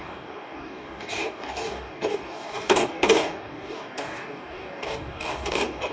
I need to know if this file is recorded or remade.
remade